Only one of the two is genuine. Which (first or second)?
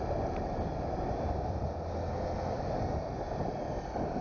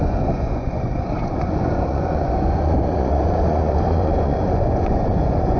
first